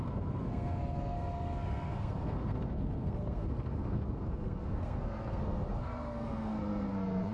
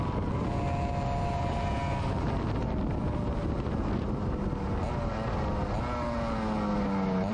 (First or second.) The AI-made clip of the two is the first